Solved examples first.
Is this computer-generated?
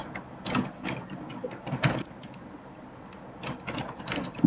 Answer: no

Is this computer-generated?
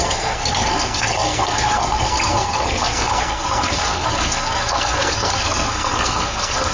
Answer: yes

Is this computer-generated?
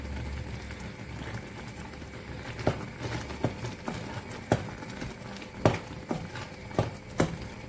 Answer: no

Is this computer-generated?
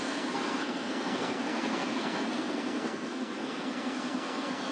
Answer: yes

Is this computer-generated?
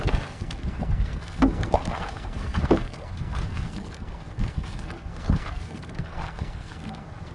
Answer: yes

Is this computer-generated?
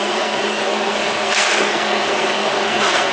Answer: yes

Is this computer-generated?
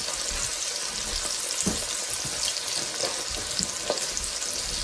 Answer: no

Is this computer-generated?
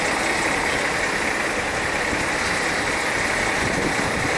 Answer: no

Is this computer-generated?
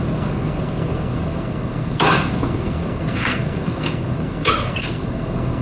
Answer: yes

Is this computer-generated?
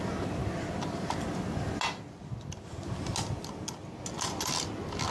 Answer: no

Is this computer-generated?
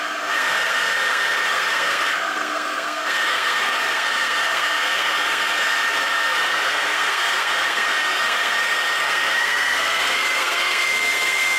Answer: yes